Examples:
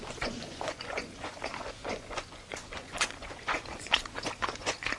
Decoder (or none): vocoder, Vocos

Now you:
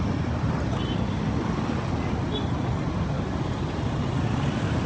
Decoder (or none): none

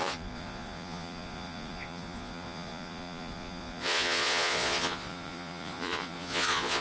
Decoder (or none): vocoder, Vocos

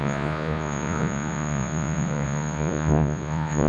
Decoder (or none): vocoder, Vocos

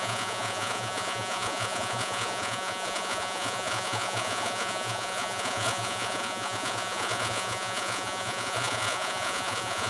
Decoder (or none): vocoder, Vocos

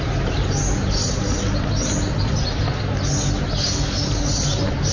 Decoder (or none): none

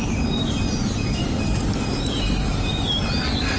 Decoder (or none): none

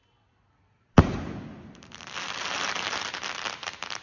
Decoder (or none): none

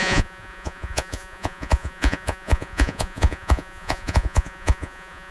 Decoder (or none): vocoder, Vocos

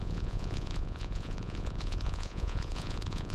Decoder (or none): vocoder, Vocos